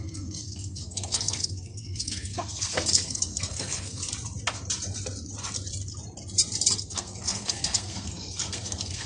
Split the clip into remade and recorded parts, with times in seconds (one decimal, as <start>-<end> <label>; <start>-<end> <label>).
0.0-4.0 remade; 4.0-6.8 recorded; 6.8-9.1 remade